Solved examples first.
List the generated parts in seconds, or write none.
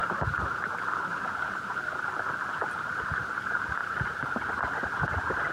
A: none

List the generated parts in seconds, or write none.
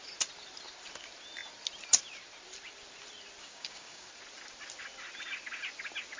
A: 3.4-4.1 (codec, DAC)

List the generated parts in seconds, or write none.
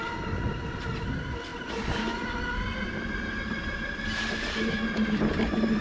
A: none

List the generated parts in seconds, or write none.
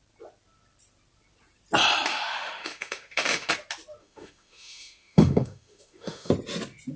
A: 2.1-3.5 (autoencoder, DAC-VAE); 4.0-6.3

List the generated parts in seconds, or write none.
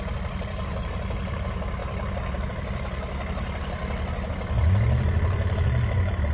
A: 0.0-1.8 (vocoder, BigVGAN v2); 2.5-3.8; 5.1-6.3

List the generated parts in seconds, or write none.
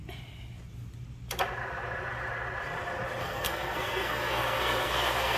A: 3.2-5.4 (codec, SNAC)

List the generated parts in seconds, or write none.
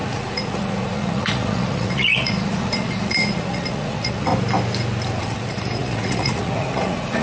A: 0.0-4.3 (vocoder, Vocos); 5.2-7.2